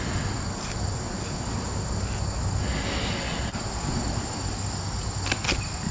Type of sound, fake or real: real